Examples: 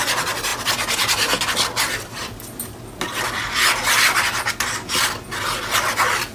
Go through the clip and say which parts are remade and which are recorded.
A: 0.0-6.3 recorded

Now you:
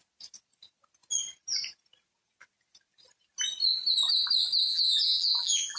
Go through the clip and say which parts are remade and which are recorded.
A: 0.0-4.7 recorded; 4.7-5.8 remade

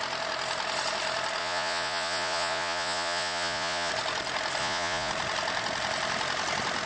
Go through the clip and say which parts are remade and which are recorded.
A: 0.0-1.4 recorded; 1.4-3.9 remade; 3.9-4.6 recorded; 4.6-5.1 remade; 5.1-6.9 recorded